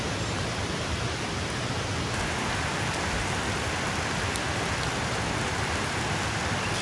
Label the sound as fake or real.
real